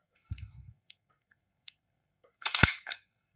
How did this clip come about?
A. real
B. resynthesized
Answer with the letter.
B